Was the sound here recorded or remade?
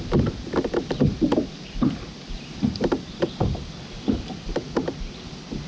recorded